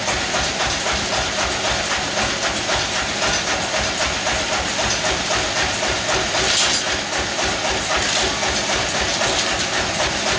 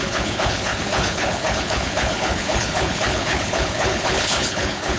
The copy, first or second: second